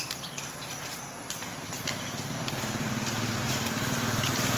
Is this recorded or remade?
recorded